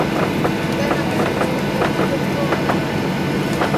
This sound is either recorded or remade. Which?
recorded